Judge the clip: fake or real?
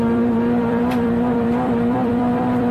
fake